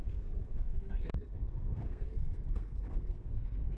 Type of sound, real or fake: fake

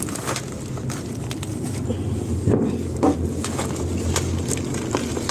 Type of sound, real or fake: real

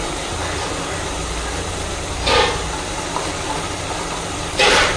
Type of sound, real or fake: real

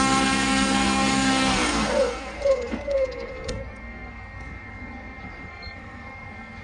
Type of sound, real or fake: fake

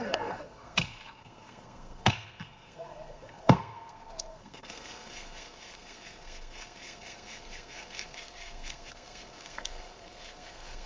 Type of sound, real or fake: fake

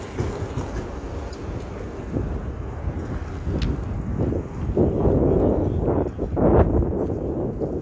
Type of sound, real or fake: real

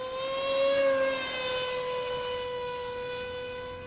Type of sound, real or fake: real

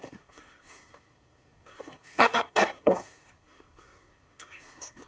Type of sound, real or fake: fake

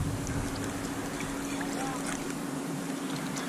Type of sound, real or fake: real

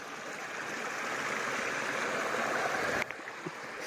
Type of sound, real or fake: real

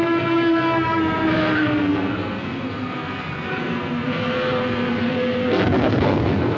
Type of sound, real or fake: fake